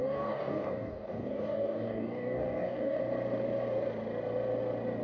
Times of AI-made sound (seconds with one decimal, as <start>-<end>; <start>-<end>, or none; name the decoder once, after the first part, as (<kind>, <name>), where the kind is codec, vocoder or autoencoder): 0.0-3.0 (codec, DAC)